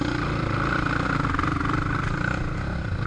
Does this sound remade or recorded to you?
recorded